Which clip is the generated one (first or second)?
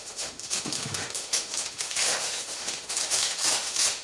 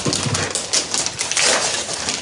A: first